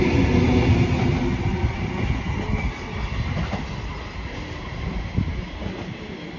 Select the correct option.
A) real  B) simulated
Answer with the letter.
A